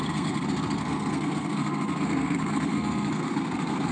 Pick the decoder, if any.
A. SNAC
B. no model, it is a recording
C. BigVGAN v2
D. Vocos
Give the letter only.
A